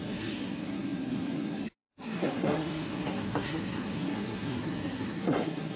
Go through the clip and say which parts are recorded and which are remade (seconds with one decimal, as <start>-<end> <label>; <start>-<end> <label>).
0.0-5.8 remade